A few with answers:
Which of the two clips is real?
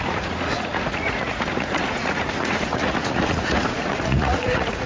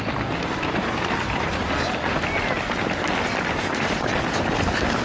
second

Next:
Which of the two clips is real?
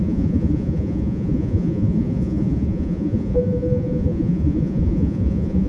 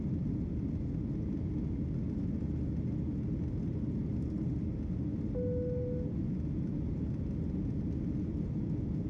second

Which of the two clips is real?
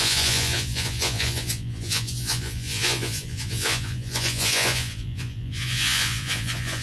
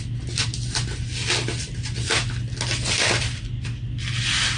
second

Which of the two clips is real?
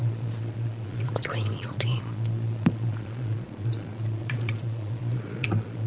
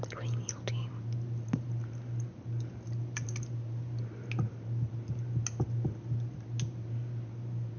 second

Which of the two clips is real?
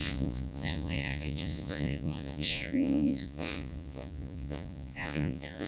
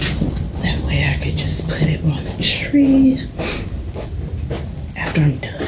second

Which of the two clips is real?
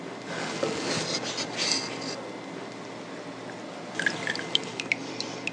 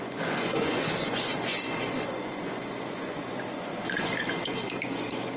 first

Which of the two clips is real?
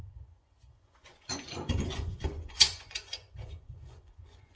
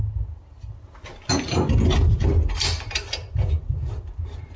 second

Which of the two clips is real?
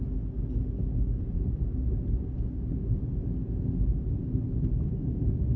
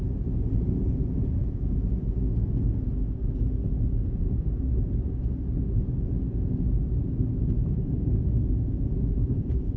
first